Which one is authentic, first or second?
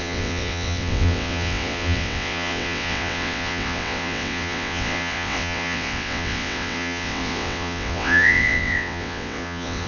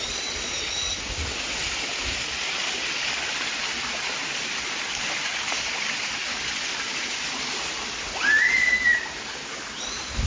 second